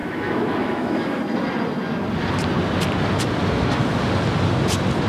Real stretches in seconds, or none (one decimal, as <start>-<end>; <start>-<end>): 1.2-5.1